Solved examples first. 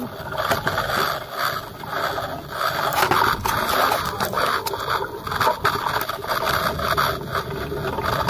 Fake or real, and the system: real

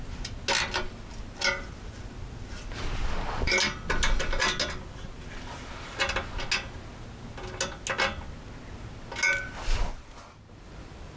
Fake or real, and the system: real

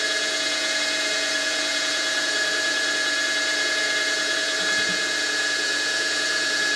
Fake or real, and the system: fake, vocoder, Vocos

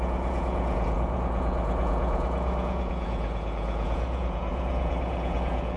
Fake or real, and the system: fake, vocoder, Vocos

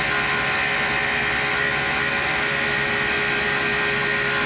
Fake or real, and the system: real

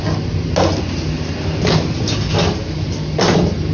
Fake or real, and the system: real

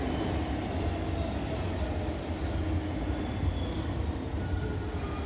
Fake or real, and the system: real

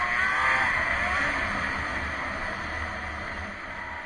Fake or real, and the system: real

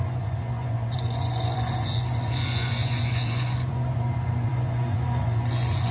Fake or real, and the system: fake, vocoder, Vocos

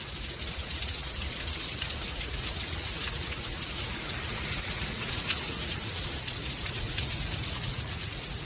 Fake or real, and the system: fake, vocoder, Vocos